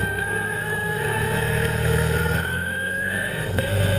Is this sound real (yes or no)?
no